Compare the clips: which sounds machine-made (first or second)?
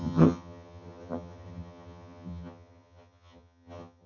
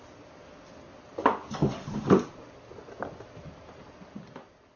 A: first